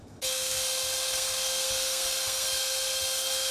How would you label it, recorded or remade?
remade